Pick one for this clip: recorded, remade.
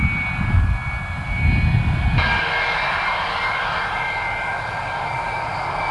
recorded